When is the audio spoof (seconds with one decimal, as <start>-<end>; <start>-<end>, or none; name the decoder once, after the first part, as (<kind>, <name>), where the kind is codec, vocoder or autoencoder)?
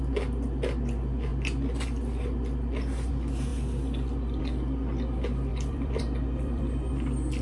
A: 5.5-6.9 (vocoder, BigVGAN v2)